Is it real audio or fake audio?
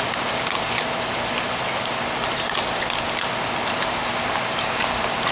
real